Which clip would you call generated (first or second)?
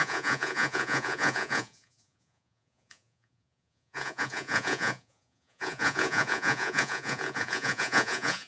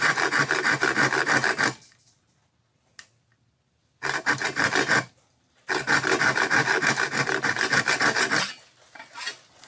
first